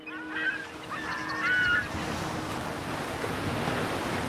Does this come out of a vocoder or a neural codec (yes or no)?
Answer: no